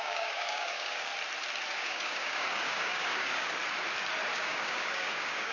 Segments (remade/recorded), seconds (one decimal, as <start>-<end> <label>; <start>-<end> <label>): 0.0-1.1 remade; 1.1-1.7 recorded; 1.7-3.6 remade; 3.6-4.3 recorded; 4.3-5.5 remade